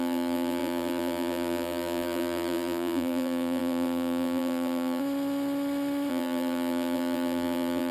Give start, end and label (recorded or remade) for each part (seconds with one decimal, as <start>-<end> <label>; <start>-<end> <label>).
0.0-5.0 remade; 5.0-6.1 recorded; 6.1-7.9 remade